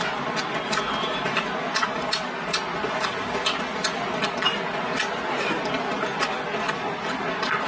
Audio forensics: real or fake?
real